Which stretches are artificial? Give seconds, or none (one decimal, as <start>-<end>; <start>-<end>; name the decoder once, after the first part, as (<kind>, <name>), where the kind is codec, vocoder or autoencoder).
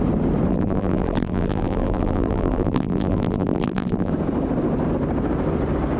0.5-4.1 (vocoder, BigVGAN v2)